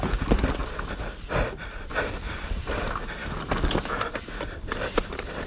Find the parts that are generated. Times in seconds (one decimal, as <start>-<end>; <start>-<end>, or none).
0.0-0.6; 1.5-3.2; 4.6-5.5